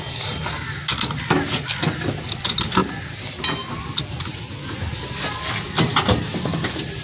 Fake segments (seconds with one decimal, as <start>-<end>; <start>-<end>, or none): none